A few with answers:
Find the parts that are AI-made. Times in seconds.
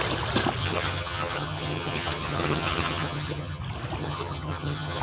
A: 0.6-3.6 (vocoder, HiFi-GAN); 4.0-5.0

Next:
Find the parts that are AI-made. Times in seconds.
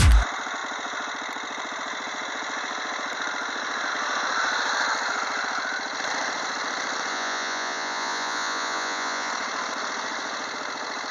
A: 7.1-9.3 (vocoder, Vocos)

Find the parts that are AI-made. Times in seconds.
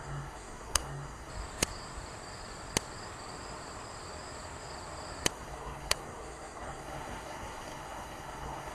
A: 0.0-1.3 (codec, SNAC); 5.3-8.7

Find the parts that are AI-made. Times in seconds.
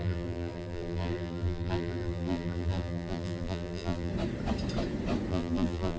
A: 0.0-4.1 (vocoder, BigVGAN v2); 5.3-6.0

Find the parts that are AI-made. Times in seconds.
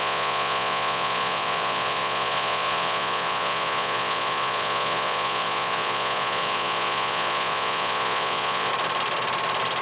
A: 0.0-8.7 (vocoder, Vocos)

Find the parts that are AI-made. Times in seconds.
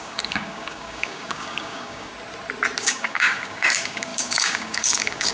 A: 0.0-2.1 (codec, DAC); 2.8-5.3